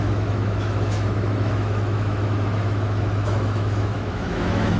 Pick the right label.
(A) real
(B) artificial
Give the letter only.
B